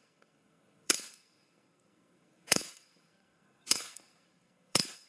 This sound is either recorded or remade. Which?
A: remade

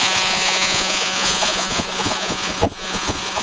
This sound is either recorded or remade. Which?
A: remade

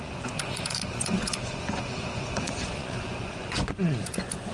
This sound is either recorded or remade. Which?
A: remade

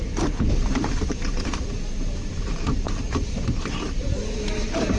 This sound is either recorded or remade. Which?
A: remade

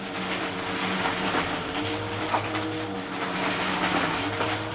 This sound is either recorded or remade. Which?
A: recorded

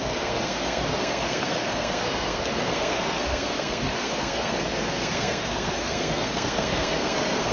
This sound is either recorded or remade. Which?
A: remade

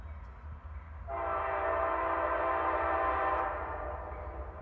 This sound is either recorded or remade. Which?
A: recorded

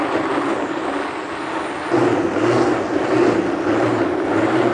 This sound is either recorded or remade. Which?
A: recorded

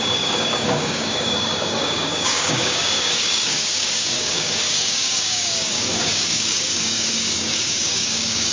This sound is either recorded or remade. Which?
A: remade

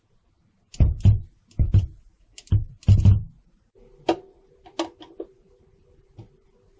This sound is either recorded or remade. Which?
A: recorded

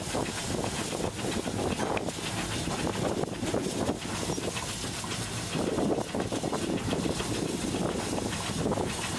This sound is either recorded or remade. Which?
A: recorded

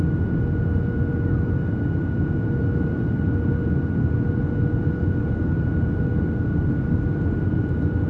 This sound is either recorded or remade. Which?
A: recorded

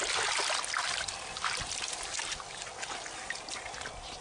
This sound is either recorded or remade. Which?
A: recorded